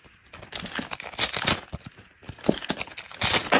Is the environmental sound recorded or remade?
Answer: recorded